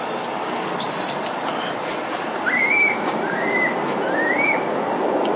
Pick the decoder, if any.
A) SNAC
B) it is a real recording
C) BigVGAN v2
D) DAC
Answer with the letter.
B